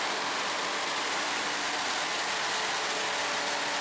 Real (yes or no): yes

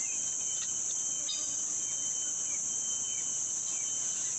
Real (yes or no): yes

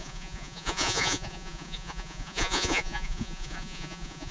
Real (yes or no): no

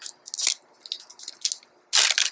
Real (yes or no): yes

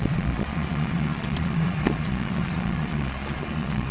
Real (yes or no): no